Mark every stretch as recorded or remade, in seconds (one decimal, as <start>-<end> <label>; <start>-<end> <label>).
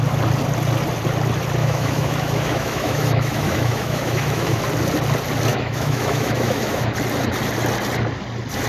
0.0-1.6 recorded; 1.6-4.6 remade; 4.6-5.5 recorded; 5.5-6.9 remade; 6.9-8.7 recorded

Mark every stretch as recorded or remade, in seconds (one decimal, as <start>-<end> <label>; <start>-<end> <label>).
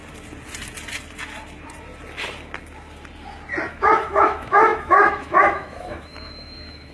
0.0-3.7 recorded; 3.7-6.9 remade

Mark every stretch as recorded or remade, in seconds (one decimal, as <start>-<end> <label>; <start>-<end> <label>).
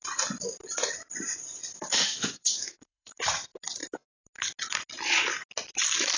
0.0-1.7 recorded; 1.7-3.2 remade; 3.2-6.2 recorded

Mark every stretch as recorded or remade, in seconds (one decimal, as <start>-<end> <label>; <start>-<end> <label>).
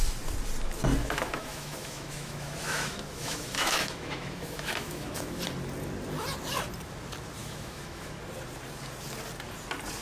0.0-1.0 recorded; 1.0-5.4 remade; 5.4-7.4 recorded; 7.4-8.2 remade; 8.2-10.0 recorded